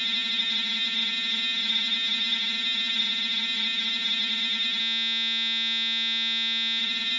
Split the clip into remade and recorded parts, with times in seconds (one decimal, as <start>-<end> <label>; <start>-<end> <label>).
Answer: 0.0-4.8 remade; 4.8-6.8 recorded; 6.8-7.2 remade